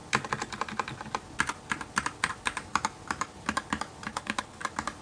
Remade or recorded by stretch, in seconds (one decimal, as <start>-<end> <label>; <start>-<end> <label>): 0.0-4.1 recorded; 4.1-4.6 remade; 4.6-5.0 recorded